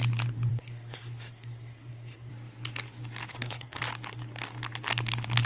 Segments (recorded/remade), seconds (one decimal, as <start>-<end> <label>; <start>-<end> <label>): 0.0-0.5 recorded; 0.5-2.3 remade; 2.3-3.3 recorded; 3.3-3.8 remade; 3.8-5.5 recorded